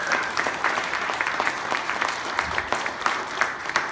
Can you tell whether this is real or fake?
fake